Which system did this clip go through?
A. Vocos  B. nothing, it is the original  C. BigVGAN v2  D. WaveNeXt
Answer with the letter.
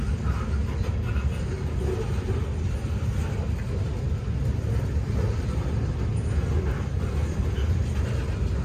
B